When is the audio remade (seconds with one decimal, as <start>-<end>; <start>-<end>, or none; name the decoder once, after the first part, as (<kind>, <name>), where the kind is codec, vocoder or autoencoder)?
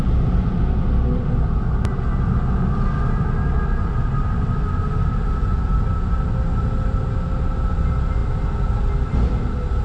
none